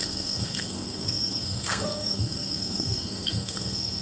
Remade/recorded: remade